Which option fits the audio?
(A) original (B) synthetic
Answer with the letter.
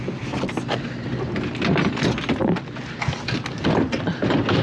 A